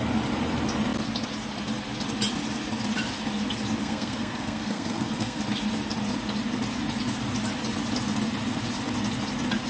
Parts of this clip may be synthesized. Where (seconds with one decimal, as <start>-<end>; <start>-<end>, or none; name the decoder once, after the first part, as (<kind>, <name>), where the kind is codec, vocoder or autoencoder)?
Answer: 3.8-5.4 (codec, SNAC)